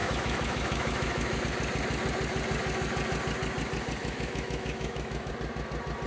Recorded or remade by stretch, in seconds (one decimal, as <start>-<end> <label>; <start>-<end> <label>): 0.0-1.4 remade; 1.4-4.0 recorded; 4.0-5.3 remade; 5.3-6.1 recorded